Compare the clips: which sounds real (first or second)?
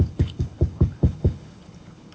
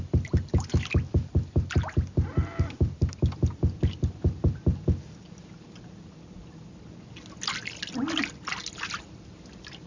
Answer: second